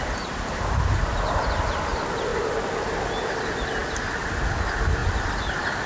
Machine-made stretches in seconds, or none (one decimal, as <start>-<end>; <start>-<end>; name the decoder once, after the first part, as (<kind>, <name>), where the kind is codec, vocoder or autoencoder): none